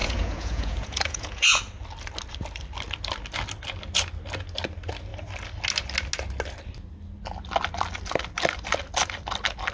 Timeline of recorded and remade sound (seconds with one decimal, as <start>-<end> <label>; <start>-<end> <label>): 0.0-1.6 remade; 1.6-9.7 recorded